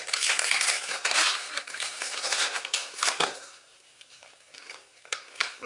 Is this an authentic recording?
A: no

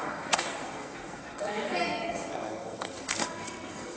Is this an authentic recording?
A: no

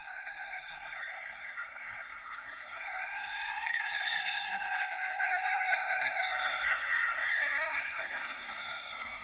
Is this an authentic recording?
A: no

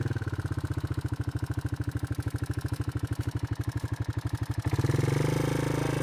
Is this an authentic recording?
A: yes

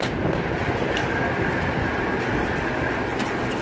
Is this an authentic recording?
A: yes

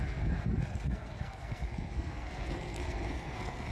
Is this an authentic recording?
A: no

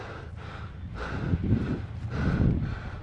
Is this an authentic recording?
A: yes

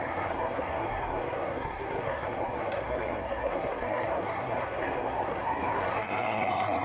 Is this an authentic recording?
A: no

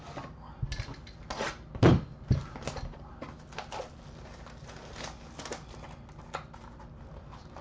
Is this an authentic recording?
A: yes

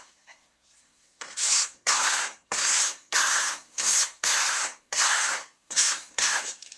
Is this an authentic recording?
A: no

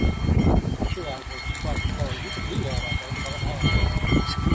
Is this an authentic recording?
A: yes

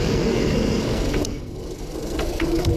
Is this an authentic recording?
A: no